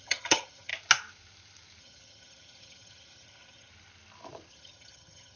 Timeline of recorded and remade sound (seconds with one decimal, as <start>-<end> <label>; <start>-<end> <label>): 0.0-0.7 remade; 0.7-1.8 recorded; 1.8-3.7 remade; 3.7-4.5 recorded; 4.5-5.4 remade